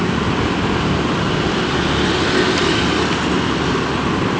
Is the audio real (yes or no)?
yes